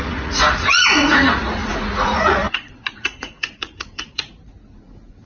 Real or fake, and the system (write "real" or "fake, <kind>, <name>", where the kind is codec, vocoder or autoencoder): fake, vocoder, Vocos